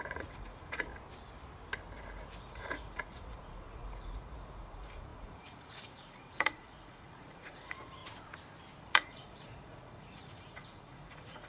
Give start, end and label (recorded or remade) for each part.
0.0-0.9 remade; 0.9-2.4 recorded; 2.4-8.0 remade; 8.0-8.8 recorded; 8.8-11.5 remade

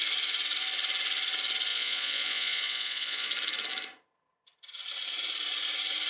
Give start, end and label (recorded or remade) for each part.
0.0-1.7 recorded; 1.7-3.3 remade; 3.3-6.1 recorded

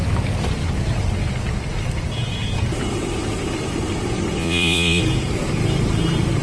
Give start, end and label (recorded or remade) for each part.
0.0-4.4 recorded; 4.4-5.0 remade; 5.0-6.4 recorded

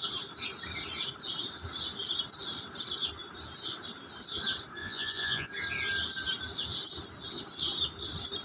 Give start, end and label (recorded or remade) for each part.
0.0-4.8 recorded; 4.8-5.5 remade; 5.5-8.4 recorded

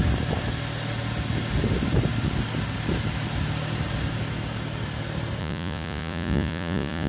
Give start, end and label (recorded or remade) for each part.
0.0-5.4 recorded; 5.4-7.1 remade

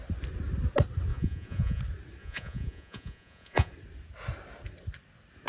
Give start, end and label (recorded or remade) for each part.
0.0-1.1 recorded; 1.1-1.8 remade; 1.8-2.2 recorded; 2.2-3.7 remade; 3.7-5.5 recorded

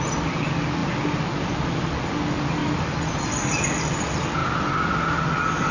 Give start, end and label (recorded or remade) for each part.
0.0-5.7 recorded

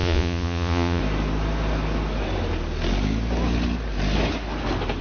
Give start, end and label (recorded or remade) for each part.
0.0-1.0 remade; 1.0-5.0 recorded